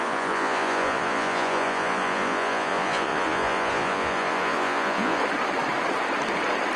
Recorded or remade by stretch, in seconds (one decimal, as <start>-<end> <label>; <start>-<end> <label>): 0.0-5.2 remade; 5.2-6.8 recorded